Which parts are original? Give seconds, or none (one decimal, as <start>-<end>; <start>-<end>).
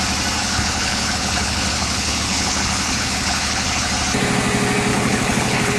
0.0-0.4; 3.9-4.9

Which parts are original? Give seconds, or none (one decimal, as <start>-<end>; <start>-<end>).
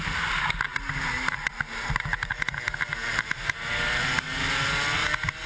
0.0-5.5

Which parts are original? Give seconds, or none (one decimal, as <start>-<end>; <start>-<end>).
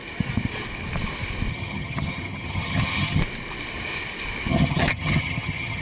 0.0-1.5; 3.2-4.5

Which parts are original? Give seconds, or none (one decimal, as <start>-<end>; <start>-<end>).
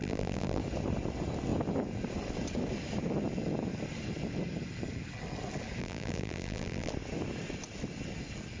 0.6-5.8; 6.9-8.6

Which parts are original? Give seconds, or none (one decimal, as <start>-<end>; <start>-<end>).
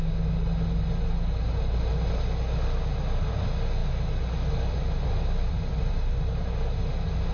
0.0-7.3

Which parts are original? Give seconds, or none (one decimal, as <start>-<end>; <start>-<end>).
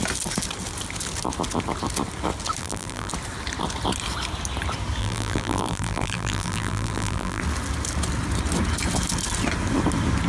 0.0-2.6; 3.1-5.0; 7.4-10.3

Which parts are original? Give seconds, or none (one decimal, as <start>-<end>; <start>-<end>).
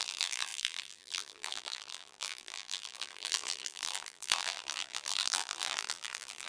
none